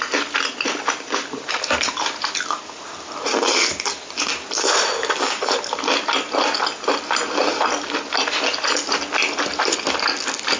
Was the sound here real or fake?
real